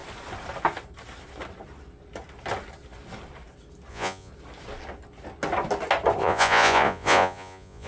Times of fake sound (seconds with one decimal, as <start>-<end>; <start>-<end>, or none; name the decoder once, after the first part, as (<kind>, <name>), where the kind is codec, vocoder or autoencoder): 3.9-4.3 (vocoder, Vocos); 6.2-7.9

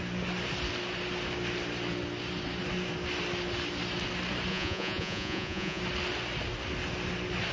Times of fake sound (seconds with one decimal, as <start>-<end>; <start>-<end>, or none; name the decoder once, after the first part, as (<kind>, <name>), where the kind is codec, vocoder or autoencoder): 4.5-5.8 (vocoder, Vocos)

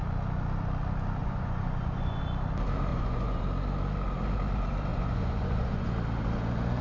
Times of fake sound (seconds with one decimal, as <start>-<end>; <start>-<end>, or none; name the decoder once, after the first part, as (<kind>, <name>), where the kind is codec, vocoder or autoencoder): 1.2-2.2 (vocoder, Vocos); 2.9-3.4; 4.9-5.9

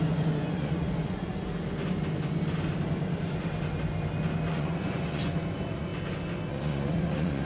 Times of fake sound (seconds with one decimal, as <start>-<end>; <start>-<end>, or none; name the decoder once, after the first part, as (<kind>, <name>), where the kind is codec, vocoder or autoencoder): 0.0-1.3 (vocoder, Vocos); 4.5-5.9; 6.5-7.5

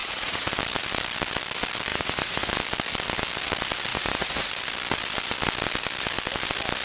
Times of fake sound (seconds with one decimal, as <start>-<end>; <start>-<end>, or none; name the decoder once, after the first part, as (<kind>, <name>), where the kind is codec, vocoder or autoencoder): 0.0-0.5 (vocoder, Vocos); 1.9-2.5; 3.9-4.5